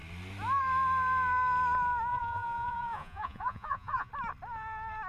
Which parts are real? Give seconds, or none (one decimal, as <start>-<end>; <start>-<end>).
0.0-2.1; 4.1-5.1